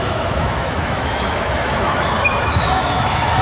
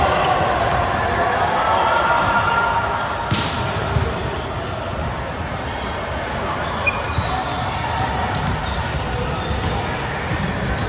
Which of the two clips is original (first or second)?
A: second